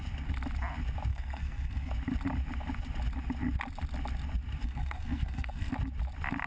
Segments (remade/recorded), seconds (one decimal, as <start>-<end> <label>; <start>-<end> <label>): 0.0-1.1 recorded; 1.1-1.9 remade; 1.9-4.6 recorded; 4.6-5.7 remade; 5.7-6.5 recorded

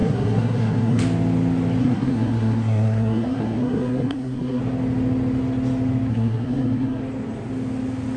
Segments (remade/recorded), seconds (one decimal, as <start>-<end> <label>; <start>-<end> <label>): 0.0-1.0 remade; 1.0-1.8 recorded; 1.8-4.6 remade; 4.6-6.1 recorded; 6.1-7.0 remade; 7.0-8.2 recorded

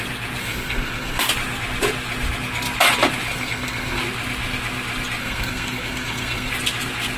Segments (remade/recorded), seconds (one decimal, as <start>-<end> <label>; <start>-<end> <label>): 0.0-0.4 recorded; 0.4-1.2 remade; 1.2-3.3 recorded; 3.3-4.0 remade; 4.0-5.2 recorded; 5.2-6.5 remade; 6.5-7.2 recorded

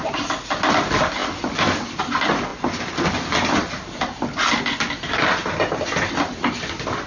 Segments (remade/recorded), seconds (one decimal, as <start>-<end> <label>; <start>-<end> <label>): 0.0-7.1 recorded

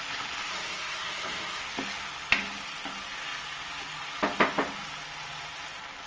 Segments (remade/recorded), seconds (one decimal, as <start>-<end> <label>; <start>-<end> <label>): 0.0-0.5 recorded; 0.5-1.6 remade; 1.6-6.1 recorded